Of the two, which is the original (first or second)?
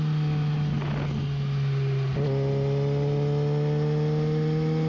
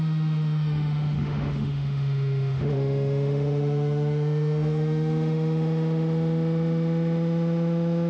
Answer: first